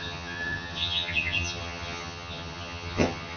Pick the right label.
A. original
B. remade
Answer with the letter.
B